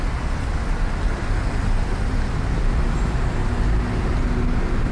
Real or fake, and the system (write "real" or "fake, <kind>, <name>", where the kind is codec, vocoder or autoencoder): real